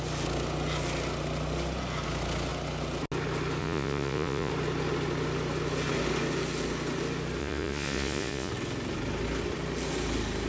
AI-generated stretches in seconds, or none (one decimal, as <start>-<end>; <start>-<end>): 3.6-4.5; 7.4-8.5